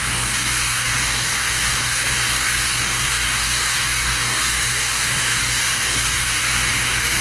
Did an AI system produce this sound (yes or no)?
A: yes